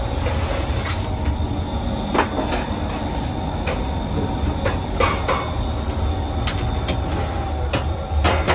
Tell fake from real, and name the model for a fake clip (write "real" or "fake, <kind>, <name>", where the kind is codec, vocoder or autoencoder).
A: real